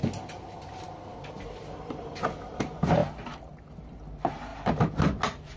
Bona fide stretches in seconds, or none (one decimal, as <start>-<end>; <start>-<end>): 0.0-5.6